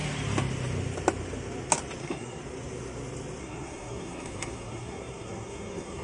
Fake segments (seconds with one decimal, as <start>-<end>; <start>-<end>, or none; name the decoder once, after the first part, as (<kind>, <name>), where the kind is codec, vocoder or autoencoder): 2.0-2.4 (codec, SNAC); 3.4-6.0